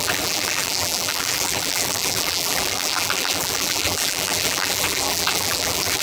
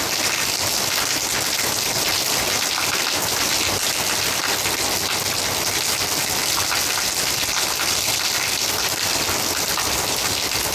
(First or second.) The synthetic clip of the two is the first